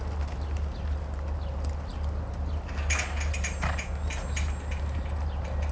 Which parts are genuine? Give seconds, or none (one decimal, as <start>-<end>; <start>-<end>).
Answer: 0.0-5.7